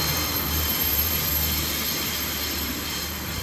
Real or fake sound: fake